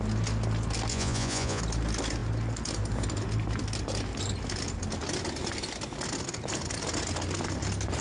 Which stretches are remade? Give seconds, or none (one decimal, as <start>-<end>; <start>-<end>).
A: 0.9-1.6

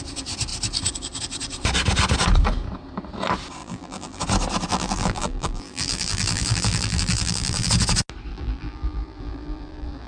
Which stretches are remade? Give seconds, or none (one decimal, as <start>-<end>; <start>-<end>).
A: 3.6-4.2; 4.7-7.7; 8.3-10.1

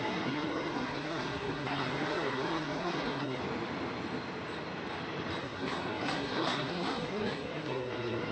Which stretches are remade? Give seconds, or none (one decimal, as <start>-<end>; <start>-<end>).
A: 0.0-3.4; 5.4-8.3

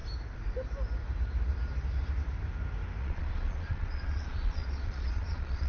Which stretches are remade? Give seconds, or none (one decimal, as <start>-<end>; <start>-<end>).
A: 3.0-5.7

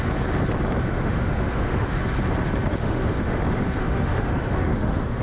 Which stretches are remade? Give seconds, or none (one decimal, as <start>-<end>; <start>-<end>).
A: 0.9-2.0; 2.7-3.4; 3.8-5.2

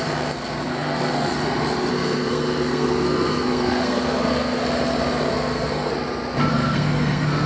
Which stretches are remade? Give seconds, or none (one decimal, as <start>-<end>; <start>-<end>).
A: 0.0-1.3; 1.9-4.6; 5.3-5.9; 6.5-7.5

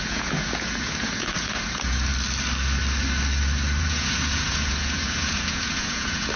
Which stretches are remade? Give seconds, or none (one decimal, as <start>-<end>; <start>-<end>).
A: 0.0-2.1; 3.8-6.4

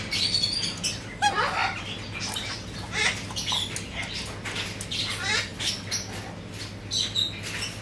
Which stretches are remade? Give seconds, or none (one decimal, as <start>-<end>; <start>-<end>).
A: none